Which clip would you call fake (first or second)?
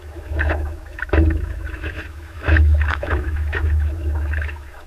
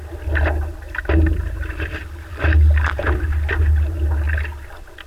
first